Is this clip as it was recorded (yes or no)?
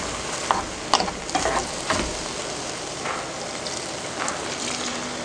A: yes